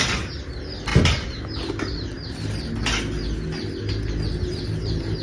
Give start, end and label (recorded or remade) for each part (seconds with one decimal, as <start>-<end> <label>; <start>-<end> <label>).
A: 0.0-5.2 recorded